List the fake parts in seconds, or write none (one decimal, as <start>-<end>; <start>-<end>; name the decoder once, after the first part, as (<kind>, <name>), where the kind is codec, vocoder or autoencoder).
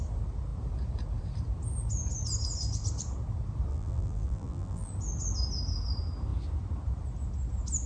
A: 3.7-4.9 (vocoder, BigVGAN v2)